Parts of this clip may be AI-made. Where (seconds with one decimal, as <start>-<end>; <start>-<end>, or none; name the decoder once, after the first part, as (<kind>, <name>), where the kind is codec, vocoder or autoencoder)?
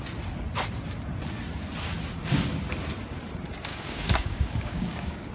3.7-5.3 (codec, DAC)